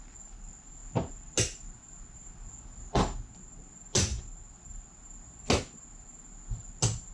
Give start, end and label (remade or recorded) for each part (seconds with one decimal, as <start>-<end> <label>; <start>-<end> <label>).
0.0-7.1 recorded